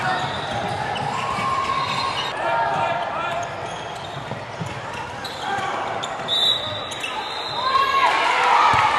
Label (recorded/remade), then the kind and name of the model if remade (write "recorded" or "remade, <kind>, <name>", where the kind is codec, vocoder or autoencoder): remade, vocoder, BigVGAN v2